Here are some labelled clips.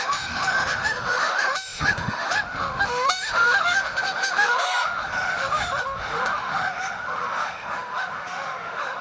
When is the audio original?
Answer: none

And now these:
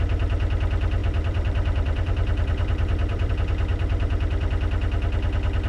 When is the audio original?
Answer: 0.0-1.0; 3.3-3.7; 4.5-5.7